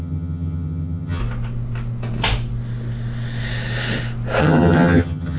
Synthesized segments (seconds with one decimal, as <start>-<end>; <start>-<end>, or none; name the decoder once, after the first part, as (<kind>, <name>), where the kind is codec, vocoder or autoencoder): 0.0-1.2 (vocoder, HiFi-GAN); 4.4-5.4